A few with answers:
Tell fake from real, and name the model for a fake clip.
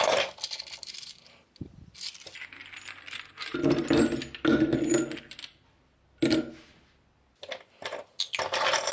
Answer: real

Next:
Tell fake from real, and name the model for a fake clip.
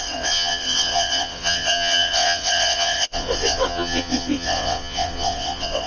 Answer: fake, vocoder, WaveNeXt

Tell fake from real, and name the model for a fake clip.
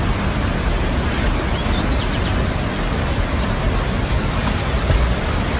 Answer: real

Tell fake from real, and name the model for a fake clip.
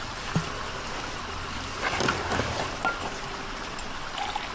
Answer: real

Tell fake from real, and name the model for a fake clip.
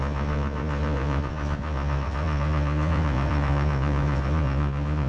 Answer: fake, vocoder, Vocos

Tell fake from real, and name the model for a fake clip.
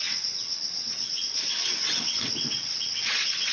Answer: fake, vocoder, WaveNeXt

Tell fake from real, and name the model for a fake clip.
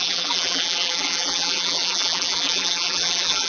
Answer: fake, vocoder, BigVGAN v2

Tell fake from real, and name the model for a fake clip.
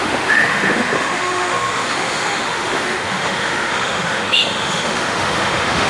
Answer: fake, autoencoder, DAC-VAE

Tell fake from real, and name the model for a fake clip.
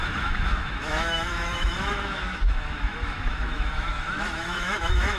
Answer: fake, autoencoder, DAC-VAE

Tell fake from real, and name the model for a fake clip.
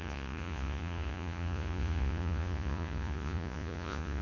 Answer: fake, vocoder, Vocos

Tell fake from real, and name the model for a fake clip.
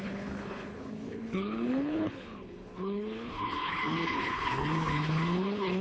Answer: fake, codec, HILCodec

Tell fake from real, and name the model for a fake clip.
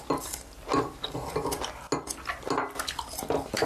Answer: real